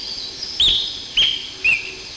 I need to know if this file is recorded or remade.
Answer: recorded